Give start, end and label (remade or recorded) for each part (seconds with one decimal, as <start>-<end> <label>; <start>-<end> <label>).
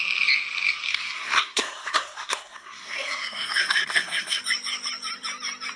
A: 0.0-0.9 recorded; 0.9-4.4 remade; 4.4-5.8 recorded